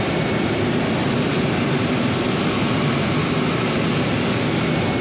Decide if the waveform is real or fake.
real